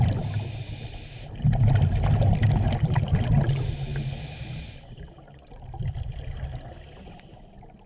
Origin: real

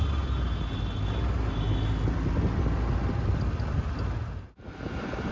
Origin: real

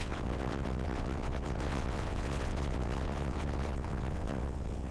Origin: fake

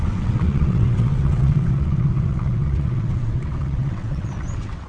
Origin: fake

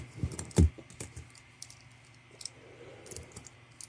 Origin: real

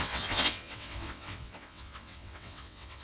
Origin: fake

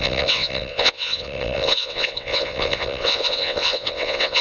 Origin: fake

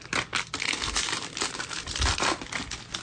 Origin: real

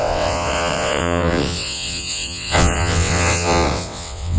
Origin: fake